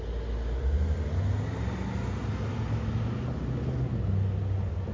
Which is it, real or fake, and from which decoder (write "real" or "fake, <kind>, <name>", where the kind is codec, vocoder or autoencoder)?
real